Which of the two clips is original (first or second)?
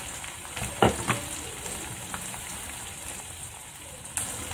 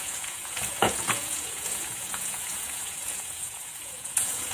first